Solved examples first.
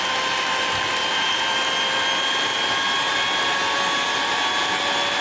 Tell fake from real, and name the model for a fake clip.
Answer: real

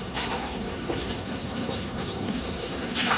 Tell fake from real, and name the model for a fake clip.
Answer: fake, codec, SNAC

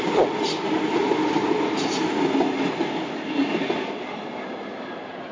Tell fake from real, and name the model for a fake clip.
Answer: real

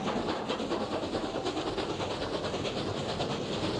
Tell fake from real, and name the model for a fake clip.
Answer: real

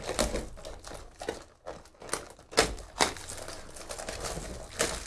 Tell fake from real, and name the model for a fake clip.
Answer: real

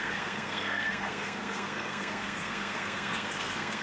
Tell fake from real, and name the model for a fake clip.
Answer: fake, codec, SNAC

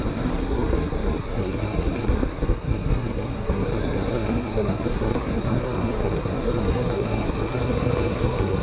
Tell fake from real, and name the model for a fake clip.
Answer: fake, codec, SNAC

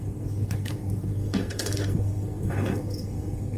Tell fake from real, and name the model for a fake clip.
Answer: fake, codec, SNAC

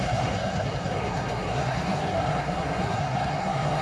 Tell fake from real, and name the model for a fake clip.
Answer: fake, codec, SNAC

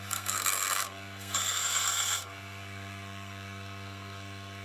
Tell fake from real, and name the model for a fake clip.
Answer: fake, codec, SNAC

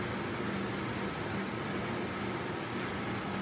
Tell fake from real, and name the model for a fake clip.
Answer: real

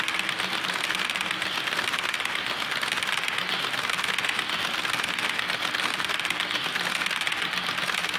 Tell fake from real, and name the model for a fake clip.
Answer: real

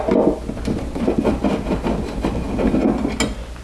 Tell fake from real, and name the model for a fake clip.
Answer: real